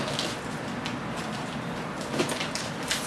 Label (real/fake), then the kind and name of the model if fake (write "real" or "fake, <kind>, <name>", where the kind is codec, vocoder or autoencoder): real